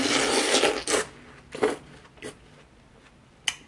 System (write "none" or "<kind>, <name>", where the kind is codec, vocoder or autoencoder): none